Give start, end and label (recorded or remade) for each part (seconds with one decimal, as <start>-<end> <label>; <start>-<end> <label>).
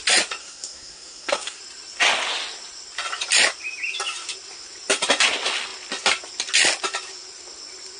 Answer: 0.0-0.4 recorded; 0.4-1.6 remade; 1.6-8.0 recorded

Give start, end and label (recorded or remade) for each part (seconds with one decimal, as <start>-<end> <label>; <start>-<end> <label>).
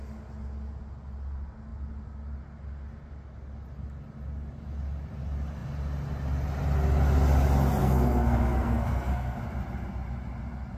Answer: 0.0-7.8 recorded; 7.8-9.4 remade; 9.4-10.8 recorded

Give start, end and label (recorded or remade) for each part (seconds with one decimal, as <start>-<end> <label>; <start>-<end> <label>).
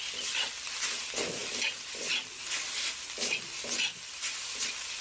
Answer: 0.0-5.0 recorded